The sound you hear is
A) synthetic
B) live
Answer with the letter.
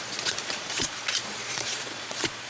A